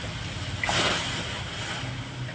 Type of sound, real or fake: real